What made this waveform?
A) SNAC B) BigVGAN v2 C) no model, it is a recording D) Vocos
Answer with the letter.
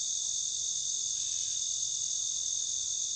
B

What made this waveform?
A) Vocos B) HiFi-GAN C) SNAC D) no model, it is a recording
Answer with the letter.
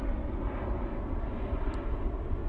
D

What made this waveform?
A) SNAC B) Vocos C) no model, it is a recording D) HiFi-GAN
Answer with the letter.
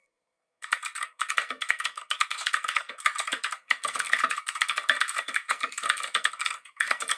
A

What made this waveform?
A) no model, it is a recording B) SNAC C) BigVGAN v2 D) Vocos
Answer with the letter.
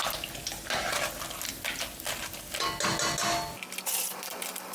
A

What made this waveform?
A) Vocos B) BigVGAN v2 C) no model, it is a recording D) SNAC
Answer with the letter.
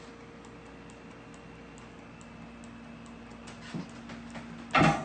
C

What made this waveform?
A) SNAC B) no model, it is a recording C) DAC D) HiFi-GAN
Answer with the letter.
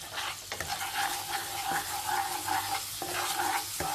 B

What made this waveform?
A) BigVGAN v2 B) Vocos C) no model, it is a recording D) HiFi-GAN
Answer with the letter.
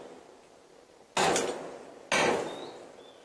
C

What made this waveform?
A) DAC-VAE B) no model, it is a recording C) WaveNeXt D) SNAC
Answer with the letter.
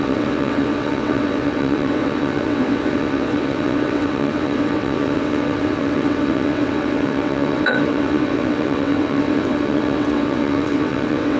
C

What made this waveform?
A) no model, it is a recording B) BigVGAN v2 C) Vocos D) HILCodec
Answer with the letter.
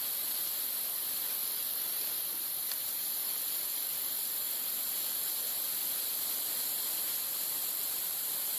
B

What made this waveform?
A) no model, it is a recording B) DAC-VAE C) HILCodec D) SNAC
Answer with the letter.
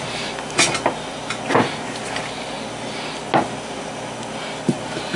A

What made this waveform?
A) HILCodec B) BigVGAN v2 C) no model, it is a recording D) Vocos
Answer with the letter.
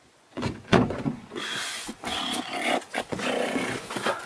D